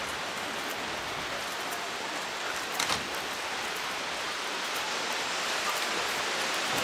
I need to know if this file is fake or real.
real